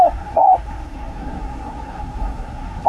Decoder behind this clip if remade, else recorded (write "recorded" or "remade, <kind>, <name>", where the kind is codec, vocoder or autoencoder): remade, codec, SNAC